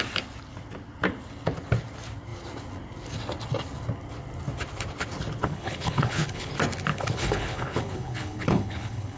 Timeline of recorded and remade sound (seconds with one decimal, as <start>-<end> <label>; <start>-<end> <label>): 0.0-5.4 recorded; 5.4-6.5 remade; 6.5-6.9 recorded; 6.9-9.2 remade

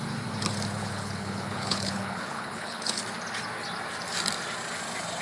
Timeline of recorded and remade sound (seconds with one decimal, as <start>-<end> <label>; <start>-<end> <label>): 0.0-0.8 recorded; 0.8-3.0 remade; 3.0-5.2 recorded

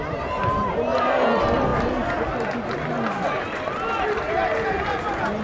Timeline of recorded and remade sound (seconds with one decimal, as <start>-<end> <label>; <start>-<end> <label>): 0.0-5.4 recorded

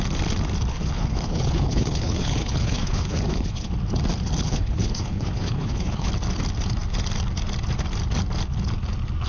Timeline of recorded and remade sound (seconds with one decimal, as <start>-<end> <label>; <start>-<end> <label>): 0.0-0.7 recorded; 0.7-3.7 remade; 3.7-4.4 recorded; 4.4-6.1 remade; 6.1-9.3 recorded

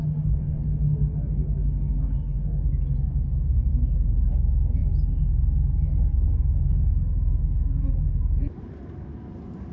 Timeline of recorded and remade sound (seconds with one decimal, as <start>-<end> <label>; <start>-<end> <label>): 0.0-9.7 recorded

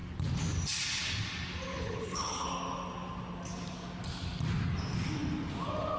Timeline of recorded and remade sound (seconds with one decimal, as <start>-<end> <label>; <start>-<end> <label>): 0.0-1.7 recorded; 1.7-2.5 remade; 2.5-6.0 recorded

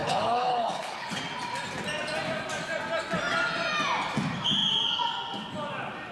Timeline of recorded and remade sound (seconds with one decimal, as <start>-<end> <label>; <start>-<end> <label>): 0.0-1.2 remade; 1.2-6.1 recorded

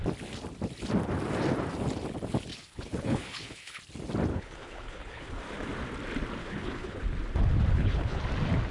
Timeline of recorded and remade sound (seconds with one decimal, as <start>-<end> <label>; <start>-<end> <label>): 0.0-2.5 recorded; 2.5-3.8 remade; 3.8-4.3 recorded; 4.3-5.4 remade; 5.4-6.4 recorded; 6.4-7.0 remade; 7.0-7.7 recorded; 7.7-8.2 remade; 8.2-8.7 recorded